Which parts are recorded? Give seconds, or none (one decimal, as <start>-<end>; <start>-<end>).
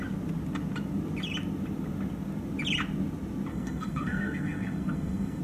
0.0-3.5